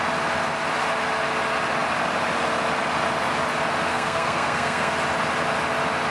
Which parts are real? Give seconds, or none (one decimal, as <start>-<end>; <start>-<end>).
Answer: 0.0-3.9; 4.9-6.1